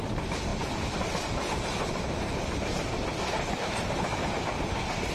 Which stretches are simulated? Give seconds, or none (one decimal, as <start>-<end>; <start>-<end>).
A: none